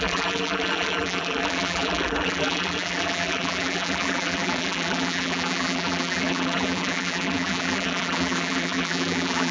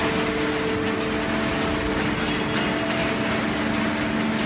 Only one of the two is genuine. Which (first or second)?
second